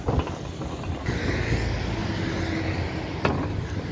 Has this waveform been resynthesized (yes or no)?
no